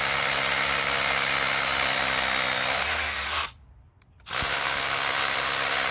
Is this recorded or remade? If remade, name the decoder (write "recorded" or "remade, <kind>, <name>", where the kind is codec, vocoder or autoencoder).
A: recorded